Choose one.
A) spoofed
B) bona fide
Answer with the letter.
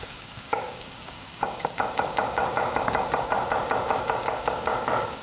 A